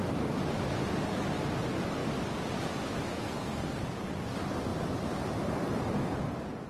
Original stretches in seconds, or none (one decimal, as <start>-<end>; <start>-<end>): 0.0-3.1; 3.8-6.7